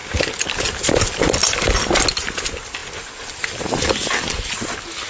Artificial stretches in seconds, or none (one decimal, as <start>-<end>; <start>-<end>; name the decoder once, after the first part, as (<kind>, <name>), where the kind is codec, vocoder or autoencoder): none

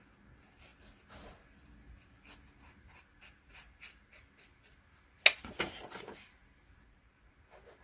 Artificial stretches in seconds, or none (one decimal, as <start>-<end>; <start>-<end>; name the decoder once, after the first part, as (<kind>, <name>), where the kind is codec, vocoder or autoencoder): none

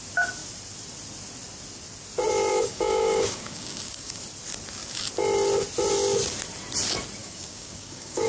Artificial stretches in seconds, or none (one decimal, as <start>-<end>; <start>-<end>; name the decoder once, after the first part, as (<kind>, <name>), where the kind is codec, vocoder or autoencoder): 2.5-4.2 (codec, DAC); 7.2-8.3

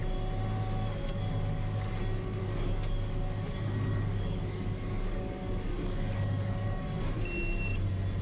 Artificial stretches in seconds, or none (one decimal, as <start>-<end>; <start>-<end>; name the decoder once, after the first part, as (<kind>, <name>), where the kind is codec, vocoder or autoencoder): 1.0-2.0 (codec, DAC); 2.4-7.2

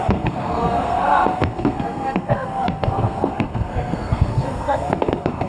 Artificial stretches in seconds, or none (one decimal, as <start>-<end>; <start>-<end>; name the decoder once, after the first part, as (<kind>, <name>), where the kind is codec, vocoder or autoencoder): 0.0-5.5 (codec, SNAC)